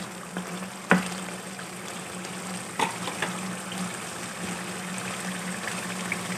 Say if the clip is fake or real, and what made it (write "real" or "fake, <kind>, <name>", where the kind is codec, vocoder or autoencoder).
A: real